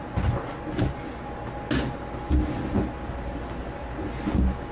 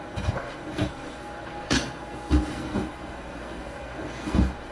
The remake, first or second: second